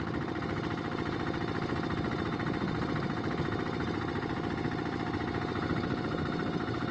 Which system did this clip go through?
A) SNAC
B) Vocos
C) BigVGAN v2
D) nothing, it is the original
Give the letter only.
D